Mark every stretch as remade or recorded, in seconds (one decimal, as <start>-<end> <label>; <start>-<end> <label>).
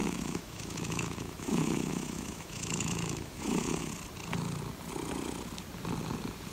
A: 0.0-3.9 remade; 3.9-6.5 recorded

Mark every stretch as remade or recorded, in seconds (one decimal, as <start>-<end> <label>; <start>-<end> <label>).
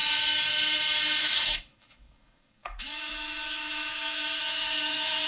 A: 0.0-1.2 recorded; 1.2-5.3 remade